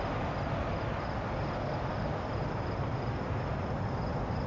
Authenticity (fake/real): real